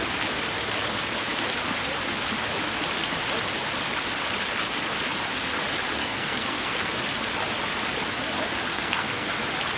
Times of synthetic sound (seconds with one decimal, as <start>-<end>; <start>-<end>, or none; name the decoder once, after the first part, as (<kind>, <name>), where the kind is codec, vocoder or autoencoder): 6.0-6.9 (codec, SNAC); 8.7-9.3